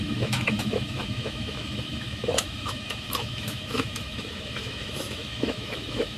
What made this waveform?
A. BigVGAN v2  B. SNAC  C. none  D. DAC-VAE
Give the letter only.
D